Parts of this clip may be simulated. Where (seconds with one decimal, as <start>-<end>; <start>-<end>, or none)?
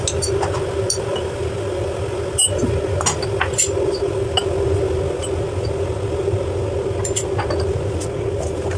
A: none